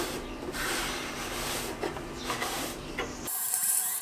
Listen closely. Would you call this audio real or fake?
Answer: fake